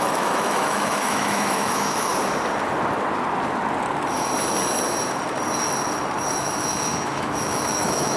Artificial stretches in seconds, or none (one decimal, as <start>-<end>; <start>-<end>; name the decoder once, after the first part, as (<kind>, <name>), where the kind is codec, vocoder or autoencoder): 0.0-2.1 (autoencoder, DAC-VAE); 6.4-8.2